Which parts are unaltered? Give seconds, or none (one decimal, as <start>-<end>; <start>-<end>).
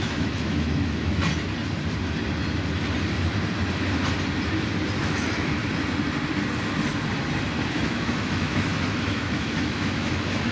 1.2-5.0; 5.6-7.7